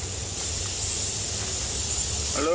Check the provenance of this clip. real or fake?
real